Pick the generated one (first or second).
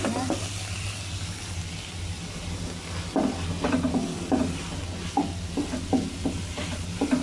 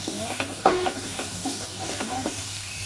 second